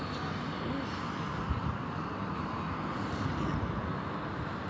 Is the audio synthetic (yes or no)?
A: no